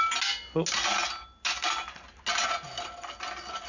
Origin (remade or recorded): recorded